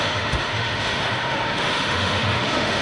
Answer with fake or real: fake